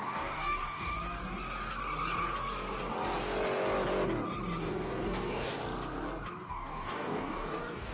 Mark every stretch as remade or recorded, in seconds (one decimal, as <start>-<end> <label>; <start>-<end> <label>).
0.0-0.9 remade; 0.9-4.6 recorded; 4.6-5.6 remade; 5.6-6.5 recorded; 6.5-7.9 remade